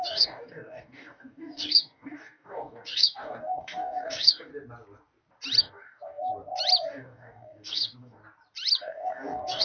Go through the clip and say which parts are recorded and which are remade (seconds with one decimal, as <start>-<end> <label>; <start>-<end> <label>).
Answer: 0.0-4.5 remade; 4.5-5.6 recorded; 5.6-6.3 remade; 6.3-6.9 recorded; 6.9-8.2 remade; 8.2-8.8 recorded; 8.8-9.6 remade